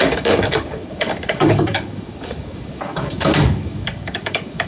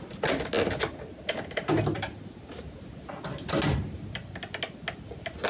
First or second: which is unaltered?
second